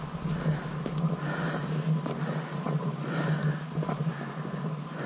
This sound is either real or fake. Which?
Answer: real